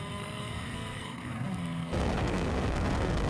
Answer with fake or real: fake